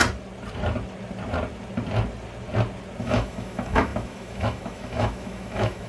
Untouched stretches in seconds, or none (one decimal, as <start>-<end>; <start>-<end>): 0.0-3.0